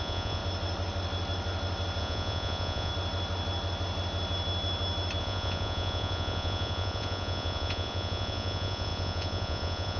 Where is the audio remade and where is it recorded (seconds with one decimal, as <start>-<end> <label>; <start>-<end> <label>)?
0.0-0.4 remade; 0.4-2.0 recorded; 2.0-2.9 remade; 2.9-5.2 recorded; 5.2-10.0 remade